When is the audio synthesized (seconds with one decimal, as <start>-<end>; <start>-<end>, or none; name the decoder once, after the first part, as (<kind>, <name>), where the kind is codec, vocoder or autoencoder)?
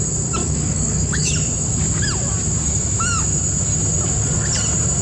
0.4-1.3 (codec, DAC)